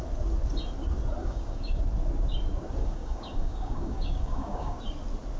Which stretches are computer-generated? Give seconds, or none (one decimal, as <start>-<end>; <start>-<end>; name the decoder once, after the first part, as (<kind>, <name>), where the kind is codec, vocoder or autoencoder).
1.2-1.8 (codec, DAC); 2.8-4.8